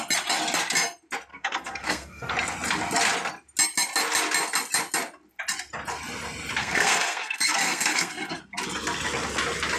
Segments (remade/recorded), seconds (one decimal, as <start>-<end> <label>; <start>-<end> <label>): 0.0-1.3 recorded; 1.3-2.3 remade; 2.3-6.6 recorded; 6.6-8.4 remade; 8.4-9.8 recorded